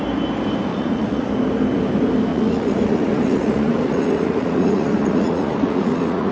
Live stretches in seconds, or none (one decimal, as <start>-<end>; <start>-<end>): 0.0-0.7; 1.3-2.3